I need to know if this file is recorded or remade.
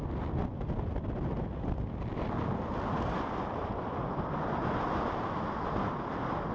recorded